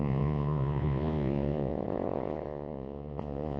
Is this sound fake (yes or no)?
yes